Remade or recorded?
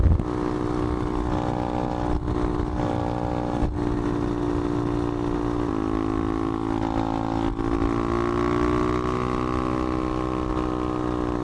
recorded